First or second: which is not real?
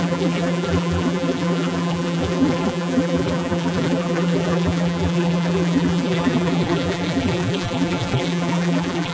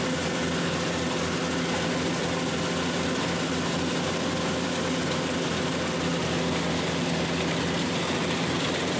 first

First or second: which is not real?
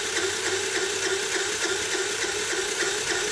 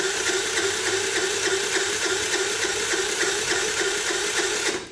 second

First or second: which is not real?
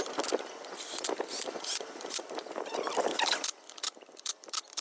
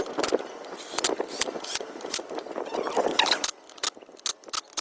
first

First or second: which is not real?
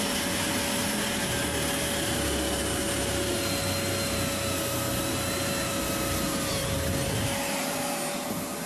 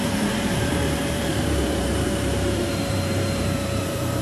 second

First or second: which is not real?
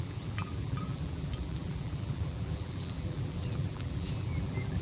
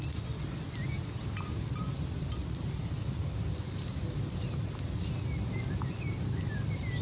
first